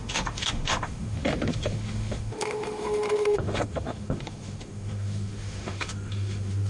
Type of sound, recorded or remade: remade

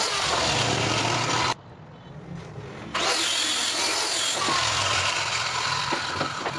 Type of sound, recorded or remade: recorded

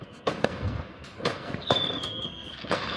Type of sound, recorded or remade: remade